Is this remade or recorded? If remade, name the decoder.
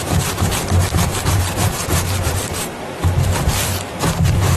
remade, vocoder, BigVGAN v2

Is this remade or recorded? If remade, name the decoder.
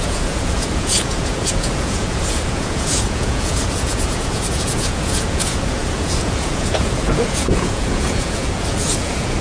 remade, vocoder, Vocos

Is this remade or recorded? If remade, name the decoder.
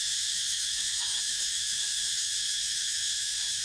remade, autoencoder, DAC-VAE